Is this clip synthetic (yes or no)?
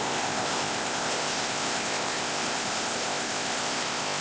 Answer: yes